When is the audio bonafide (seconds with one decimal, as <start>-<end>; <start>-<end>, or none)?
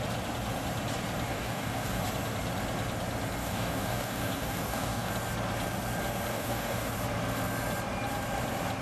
0.0-1.3; 2.0-3.4; 5.1-6.3; 6.9-8.8